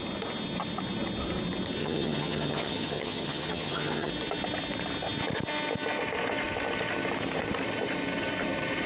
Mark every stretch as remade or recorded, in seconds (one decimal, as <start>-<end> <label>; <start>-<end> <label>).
0.0-1.8 recorded; 1.8-4.1 remade; 4.1-8.9 recorded